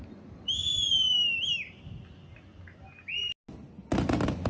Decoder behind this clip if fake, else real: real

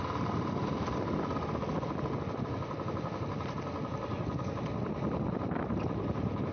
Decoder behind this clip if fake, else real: real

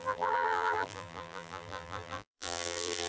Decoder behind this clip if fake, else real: fake, vocoder, BigVGAN v2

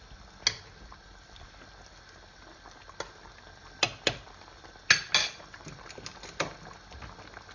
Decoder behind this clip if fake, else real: real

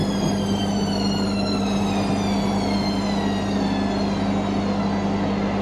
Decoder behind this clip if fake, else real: real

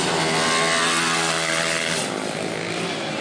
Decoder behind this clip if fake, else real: real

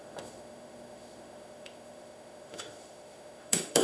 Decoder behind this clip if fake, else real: fake, autoencoder, DAC-VAE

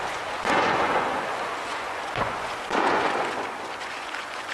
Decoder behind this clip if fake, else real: fake, vocoder, Vocos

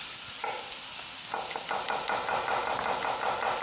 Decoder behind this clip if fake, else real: real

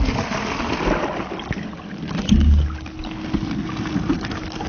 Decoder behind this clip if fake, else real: real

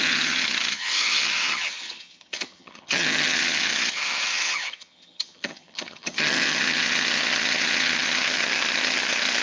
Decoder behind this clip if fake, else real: fake, vocoder, HiFi-GAN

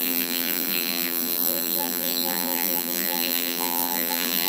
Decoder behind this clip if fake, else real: fake, vocoder, BigVGAN v2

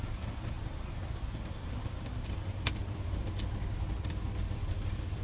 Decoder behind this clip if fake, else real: real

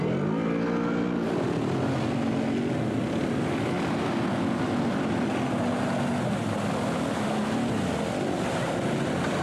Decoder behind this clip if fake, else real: real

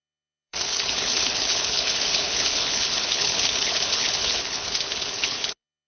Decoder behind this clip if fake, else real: fake, codec, HILCodec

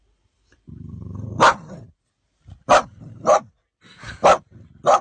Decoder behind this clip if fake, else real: real